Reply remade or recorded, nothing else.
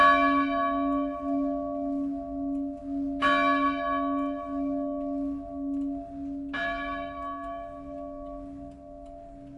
recorded